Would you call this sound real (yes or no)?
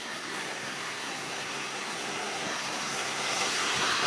no